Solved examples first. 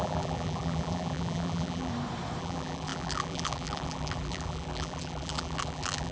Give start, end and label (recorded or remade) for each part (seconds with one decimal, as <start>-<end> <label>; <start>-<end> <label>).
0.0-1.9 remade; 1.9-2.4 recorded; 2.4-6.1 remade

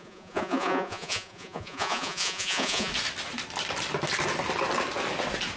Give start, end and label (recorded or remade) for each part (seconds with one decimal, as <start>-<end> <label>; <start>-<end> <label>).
0.0-2.9 remade; 2.9-5.6 recorded

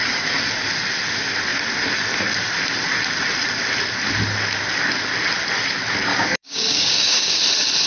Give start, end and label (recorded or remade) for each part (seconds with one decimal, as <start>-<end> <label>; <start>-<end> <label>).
0.0-6.1 recorded; 6.1-7.4 remade; 7.4-7.9 recorded

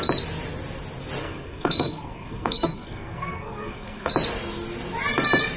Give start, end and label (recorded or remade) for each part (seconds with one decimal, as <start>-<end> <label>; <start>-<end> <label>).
0.0-1.2 recorded; 1.2-4.1 remade; 4.1-5.6 recorded

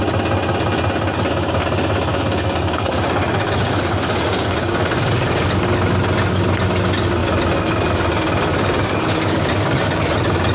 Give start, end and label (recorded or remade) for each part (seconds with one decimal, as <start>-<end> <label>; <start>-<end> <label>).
0.0-2.1 recorded; 2.1-4.8 remade; 4.8-8.5 recorded; 8.5-10.0 remade; 10.0-10.5 recorded

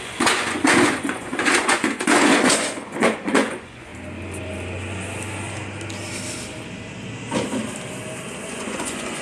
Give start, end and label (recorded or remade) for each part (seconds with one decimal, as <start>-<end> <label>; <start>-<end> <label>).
0.0-3.9 remade; 3.9-8.5 recorded; 8.5-9.2 remade